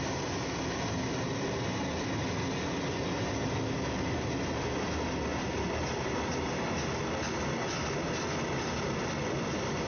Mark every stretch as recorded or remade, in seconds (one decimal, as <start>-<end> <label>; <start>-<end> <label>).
0.0-9.9 recorded